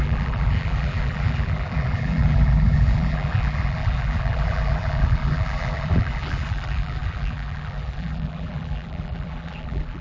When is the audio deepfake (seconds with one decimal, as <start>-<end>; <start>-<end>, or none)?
0.0-10.0